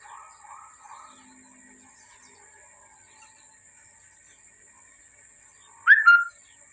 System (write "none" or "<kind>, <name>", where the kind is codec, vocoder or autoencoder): none